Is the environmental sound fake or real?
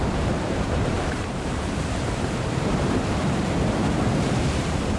fake